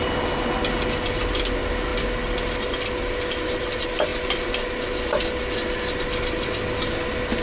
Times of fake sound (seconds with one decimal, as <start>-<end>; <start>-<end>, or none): none